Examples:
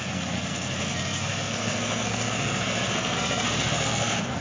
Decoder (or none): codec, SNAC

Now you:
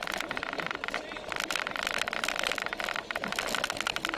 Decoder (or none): none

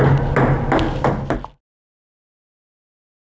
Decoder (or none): none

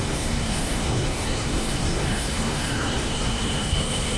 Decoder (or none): codec, SNAC